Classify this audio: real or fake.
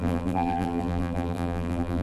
fake